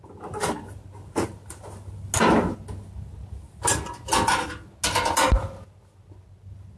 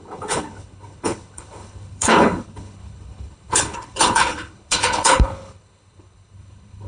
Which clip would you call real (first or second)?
first